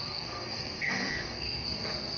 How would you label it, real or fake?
fake